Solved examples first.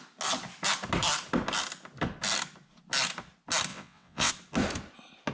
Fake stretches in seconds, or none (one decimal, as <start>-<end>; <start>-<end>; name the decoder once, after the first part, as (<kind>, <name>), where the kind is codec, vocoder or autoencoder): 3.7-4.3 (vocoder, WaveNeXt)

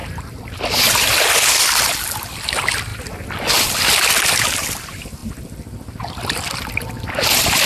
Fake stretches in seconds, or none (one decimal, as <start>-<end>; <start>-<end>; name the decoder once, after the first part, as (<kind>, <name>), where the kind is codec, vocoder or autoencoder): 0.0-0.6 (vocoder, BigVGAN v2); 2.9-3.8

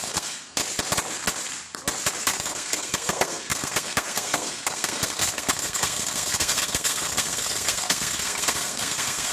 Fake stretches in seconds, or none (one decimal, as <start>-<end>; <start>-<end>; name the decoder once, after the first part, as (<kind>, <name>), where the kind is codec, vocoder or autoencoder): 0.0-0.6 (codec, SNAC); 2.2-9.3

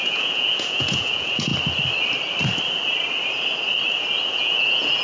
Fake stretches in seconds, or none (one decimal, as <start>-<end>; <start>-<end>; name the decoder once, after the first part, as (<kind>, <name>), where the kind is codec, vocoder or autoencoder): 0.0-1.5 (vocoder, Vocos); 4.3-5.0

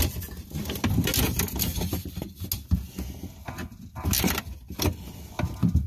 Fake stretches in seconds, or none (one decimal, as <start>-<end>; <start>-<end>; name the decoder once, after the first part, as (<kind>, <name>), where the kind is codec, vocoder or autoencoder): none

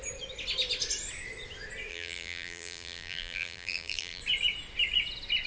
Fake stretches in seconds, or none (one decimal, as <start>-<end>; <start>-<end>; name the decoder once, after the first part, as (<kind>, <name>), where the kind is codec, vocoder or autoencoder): 1.9-4.2 (vocoder, BigVGAN v2)